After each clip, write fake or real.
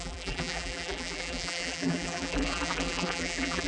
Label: fake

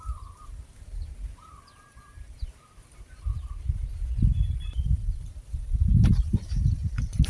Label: fake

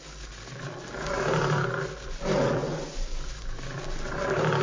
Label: real